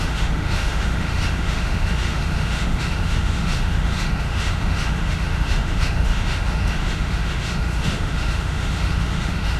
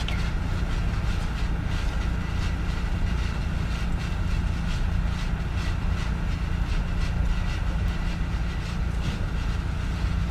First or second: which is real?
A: second